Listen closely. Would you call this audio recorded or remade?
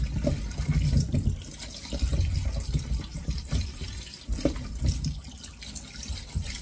recorded